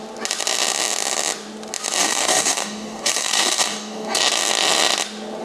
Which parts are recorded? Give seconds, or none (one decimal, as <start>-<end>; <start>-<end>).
0.0-2.0; 4.2-5.4